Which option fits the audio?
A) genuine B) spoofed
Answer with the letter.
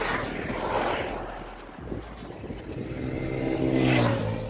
A